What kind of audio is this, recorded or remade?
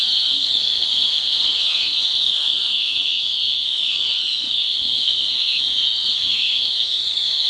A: remade